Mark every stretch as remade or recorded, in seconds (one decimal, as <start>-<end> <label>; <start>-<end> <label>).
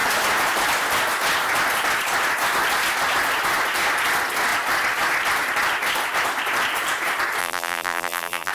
0.0-7.4 recorded; 7.4-8.5 remade